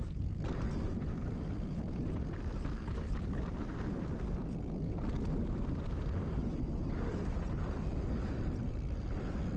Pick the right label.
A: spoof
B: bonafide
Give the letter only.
B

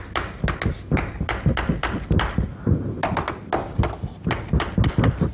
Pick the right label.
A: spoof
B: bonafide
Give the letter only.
B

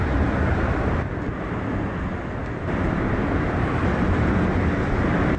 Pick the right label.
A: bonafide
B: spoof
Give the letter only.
A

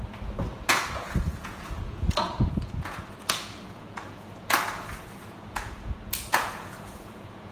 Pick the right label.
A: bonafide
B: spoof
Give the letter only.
B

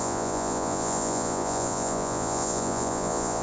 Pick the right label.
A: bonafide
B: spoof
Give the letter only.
B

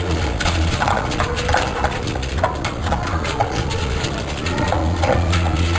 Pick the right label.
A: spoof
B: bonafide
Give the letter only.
A